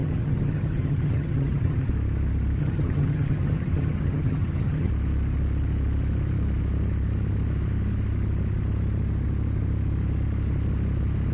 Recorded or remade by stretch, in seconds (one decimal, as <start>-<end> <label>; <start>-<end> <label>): 0.0-1.9 remade; 1.9-2.6 recorded; 2.6-4.9 remade; 4.9-11.3 recorded

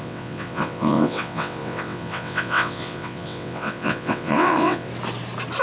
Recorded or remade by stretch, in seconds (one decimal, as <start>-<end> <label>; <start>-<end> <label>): 0.0-4.9 remade; 4.9-5.6 recorded